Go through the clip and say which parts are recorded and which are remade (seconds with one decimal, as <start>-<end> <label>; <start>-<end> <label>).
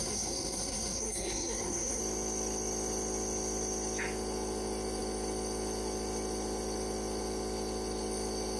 0.0-2.0 remade; 2.0-8.6 recorded